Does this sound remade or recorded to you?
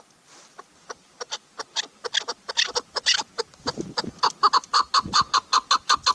recorded